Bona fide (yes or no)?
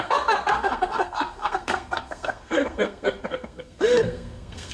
no